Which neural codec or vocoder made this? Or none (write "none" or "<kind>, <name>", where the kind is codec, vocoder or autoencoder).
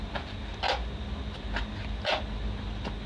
none